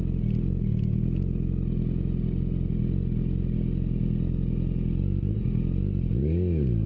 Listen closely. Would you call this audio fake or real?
real